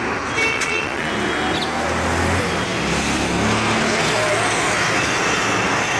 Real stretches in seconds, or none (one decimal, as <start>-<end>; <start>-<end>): 0.0-0.5; 1.1-6.0